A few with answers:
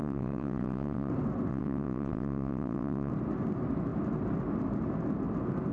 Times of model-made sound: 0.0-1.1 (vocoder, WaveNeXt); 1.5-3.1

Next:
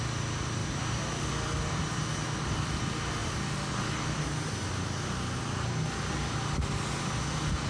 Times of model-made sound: none

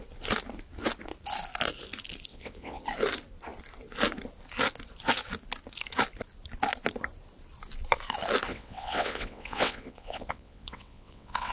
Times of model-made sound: 2.3-2.8 (vocoder, WaveNeXt); 8.5-11.5

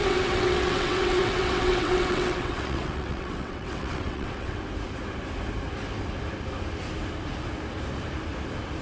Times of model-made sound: 0.0-4.6 (vocoder, WaveNeXt)